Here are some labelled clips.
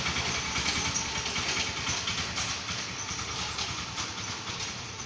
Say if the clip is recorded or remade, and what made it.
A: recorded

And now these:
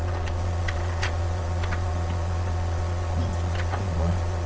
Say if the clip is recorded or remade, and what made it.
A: remade, vocoder, Vocos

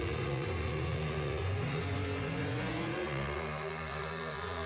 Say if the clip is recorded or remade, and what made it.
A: remade, vocoder, Vocos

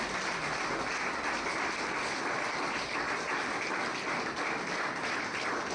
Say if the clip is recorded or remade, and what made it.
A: recorded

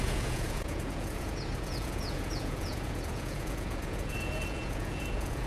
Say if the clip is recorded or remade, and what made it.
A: remade, vocoder, Vocos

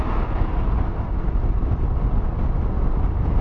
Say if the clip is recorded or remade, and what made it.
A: recorded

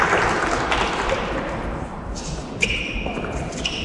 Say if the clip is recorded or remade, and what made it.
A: recorded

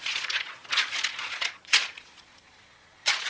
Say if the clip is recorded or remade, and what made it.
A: remade, vocoder, Vocos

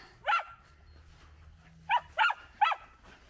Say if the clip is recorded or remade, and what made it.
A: recorded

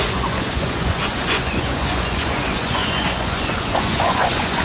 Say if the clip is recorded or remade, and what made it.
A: remade, vocoder, Vocos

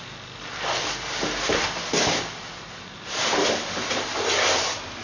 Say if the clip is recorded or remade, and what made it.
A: recorded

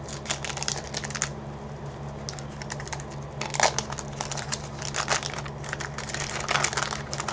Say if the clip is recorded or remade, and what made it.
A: recorded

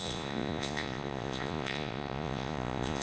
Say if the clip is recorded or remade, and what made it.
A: remade, vocoder, Vocos